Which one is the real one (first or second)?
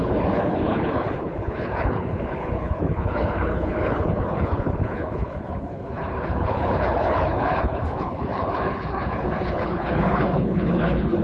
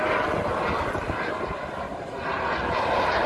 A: second